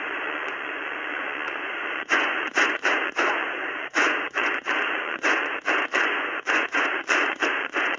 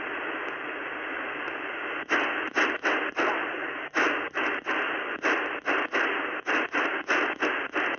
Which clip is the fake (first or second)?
first